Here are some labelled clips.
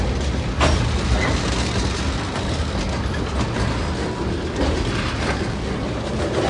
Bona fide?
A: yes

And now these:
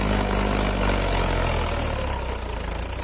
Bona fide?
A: yes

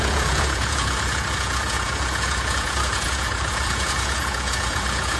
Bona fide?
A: no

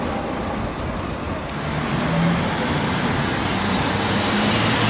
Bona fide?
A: yes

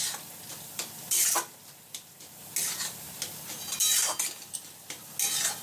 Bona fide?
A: yes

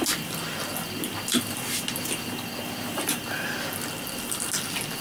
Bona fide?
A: yes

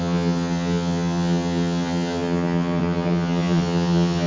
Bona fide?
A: no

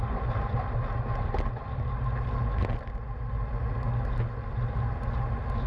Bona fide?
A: yes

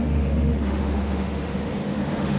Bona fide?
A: no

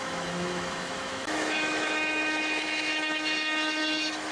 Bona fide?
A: no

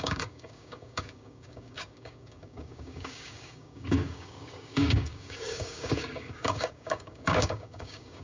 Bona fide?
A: no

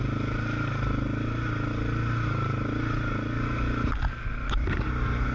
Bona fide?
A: yes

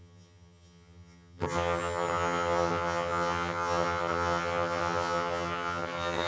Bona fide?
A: no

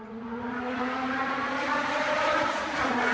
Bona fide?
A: no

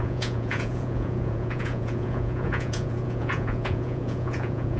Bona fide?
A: no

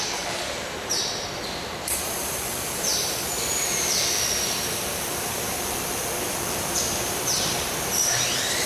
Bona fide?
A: no